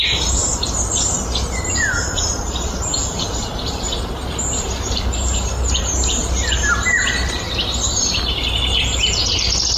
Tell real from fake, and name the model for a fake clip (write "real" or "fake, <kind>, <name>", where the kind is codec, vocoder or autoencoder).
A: fake, vocoder, BigVGAN v2